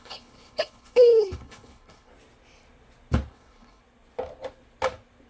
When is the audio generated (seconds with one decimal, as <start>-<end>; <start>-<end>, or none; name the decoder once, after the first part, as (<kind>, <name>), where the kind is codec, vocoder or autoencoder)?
0.0-2.1 (codec, HILCodec); 3.3-3.8